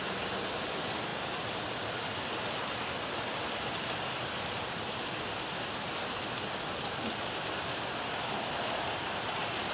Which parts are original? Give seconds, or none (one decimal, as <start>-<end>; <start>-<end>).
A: 0.0-9.7